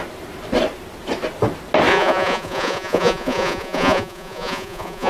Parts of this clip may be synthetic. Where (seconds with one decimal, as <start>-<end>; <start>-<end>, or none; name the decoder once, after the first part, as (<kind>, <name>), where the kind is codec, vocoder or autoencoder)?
1.9-5.1 (vocoder, Vocos)